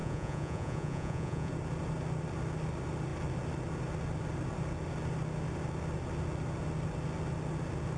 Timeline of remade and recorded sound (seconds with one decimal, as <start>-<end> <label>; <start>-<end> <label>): 0.0-1.5 remade; 1.5-8.0 recorded